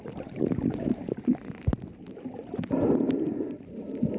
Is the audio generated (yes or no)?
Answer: no